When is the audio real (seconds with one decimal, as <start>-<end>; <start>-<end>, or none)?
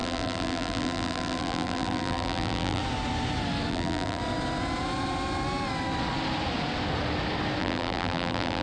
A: 2.8-3.7; 4.2-7.6